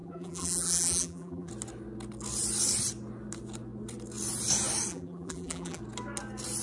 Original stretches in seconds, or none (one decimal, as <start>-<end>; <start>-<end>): 1.5-4.9; 5.8-6.6